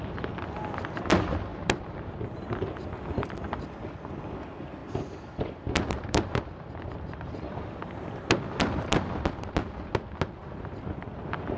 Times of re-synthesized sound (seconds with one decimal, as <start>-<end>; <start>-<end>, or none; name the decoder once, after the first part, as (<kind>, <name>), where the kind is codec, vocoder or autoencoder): 1.5-2.3 (vocoder, BigVGAN v2); 4.8-9.2